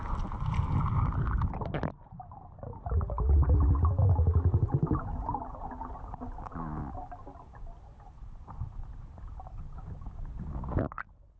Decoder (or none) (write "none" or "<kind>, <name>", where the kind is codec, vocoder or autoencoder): none